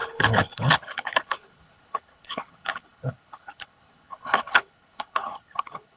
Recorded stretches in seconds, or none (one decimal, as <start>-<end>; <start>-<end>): none